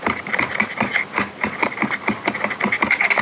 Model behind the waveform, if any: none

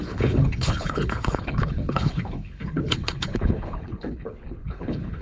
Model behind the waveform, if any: codec, HILCodec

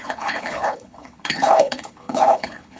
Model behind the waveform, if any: codec, HILCodec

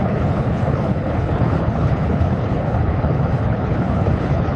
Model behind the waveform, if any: codec, HILCodec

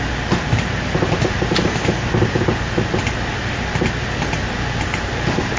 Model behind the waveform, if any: none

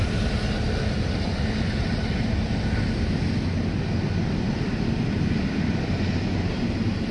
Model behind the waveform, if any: none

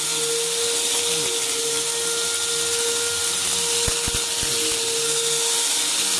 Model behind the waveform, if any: none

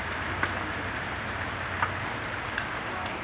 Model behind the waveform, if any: none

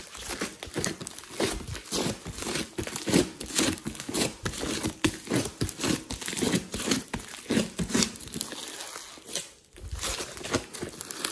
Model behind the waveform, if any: none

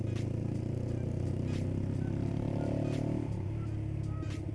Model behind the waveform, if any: none